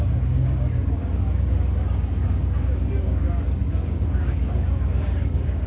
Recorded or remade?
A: remade